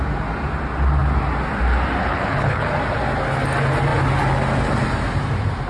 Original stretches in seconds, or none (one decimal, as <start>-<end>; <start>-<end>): 0.0-2.0; 2.7-5.7